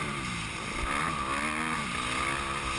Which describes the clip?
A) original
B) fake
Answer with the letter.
A